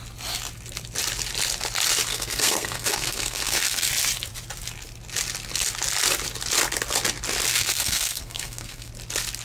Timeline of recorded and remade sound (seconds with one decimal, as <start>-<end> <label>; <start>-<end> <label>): 0.0-2.1 recorded; 2.1-3.9 remade; 3.9-7.5 recorded; 7.5-8.9 remade; 8.9-9.4 recorded